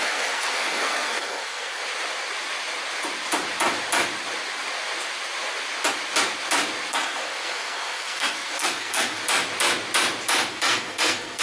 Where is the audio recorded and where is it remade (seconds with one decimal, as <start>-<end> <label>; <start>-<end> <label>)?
0.0-1.8 remade; 1.8-6.9 recorded; 6.9-9.2 remade; 9.2-10.5 recorded; 10.5-11.4 remade